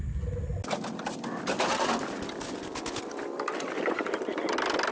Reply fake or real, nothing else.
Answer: real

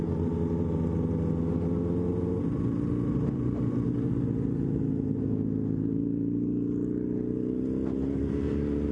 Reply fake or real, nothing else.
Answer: real